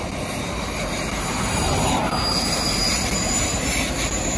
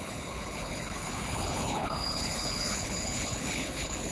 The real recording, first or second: first